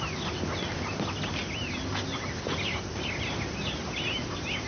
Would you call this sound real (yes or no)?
yes